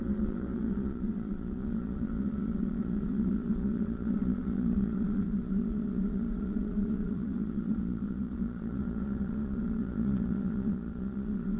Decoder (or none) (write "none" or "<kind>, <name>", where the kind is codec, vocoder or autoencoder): vocoder, Vocos